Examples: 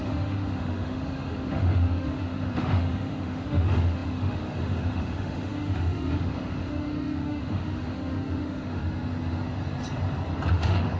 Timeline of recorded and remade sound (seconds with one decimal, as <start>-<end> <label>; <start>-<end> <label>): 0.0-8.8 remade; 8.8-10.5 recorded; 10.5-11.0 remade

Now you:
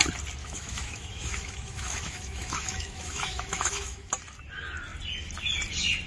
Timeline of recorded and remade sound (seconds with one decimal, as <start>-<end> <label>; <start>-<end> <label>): 0.0-0.4 recorded; 0.4-4.1 remade; 4.1-6.1 recorded

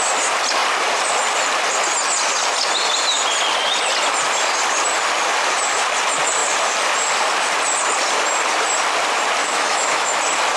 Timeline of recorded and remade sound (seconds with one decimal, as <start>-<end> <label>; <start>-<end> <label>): 0.0-9.4 recorded; 9.4-10.2 remade; 10.2-10.6 recorded

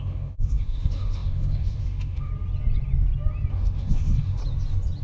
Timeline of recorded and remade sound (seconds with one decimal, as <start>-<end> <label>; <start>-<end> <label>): 0.0-2.3 remade; 2.3-3.5 recorded; 3.5-4.4 remade; 4.4-5.0 recorded

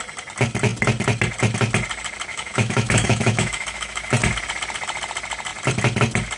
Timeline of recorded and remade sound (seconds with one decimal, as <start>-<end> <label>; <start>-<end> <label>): 0.0-2.3 recorded; 2.3-4.1 remade; 4.1-6.4 recorded